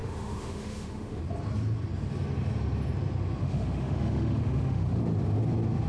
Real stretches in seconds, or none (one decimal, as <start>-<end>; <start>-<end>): 1.2-3.4; 5.0-5.9